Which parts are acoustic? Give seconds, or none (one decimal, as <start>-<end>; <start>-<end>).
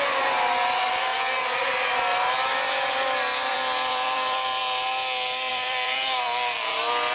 1.1-2.9; 4.6-5.5